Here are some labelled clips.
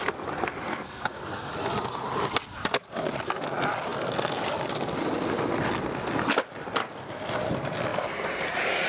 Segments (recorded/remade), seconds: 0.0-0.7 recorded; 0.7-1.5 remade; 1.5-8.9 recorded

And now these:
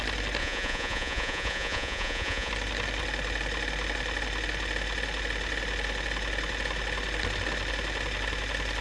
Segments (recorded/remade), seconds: 0.0-0.4 recorded; 0.4-2.5 remade; 2.5-8.8 recorded

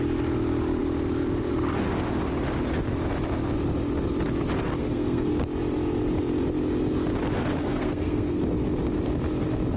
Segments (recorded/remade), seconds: 0.0-4.8 recorded; 4.8-5.3 remade; 5.3-7.6 recorded; 7.6-8.4 remade; 8.4-9.8 recorded